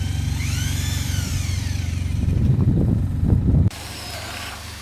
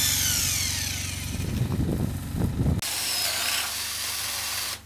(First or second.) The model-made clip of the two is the first